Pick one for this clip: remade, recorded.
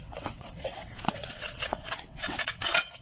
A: remade